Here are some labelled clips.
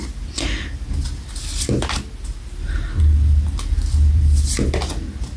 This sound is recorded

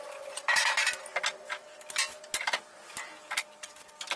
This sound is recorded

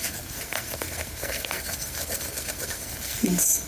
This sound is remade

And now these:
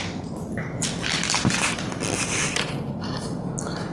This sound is recorded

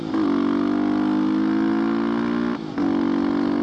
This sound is recorded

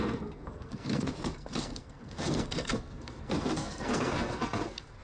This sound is remade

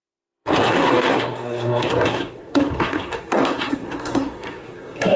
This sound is remade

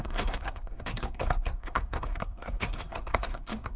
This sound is remade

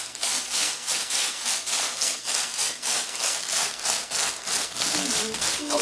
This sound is remade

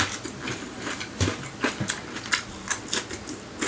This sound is recorded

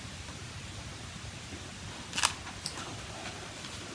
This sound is recorded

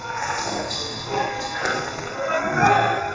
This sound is remade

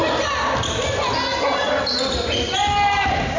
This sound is recorded